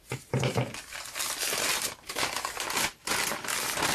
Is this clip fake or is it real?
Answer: fake